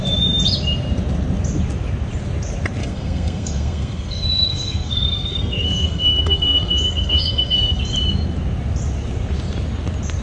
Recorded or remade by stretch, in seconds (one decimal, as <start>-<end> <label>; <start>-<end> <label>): 0.0-2.8 recorded; 2.8-7.8 remade; 7.8-10.2 recorded